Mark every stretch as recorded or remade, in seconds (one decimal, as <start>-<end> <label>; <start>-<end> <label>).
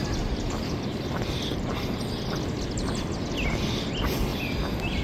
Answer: 0.0-5.0 recorded